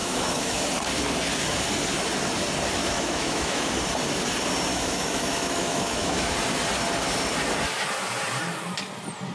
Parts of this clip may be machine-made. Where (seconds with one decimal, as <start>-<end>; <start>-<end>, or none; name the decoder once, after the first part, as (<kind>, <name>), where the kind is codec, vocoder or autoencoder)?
0.0-0.6 (autoencoder, DAC-VAE); 2.8-3.7; 4.7-6.3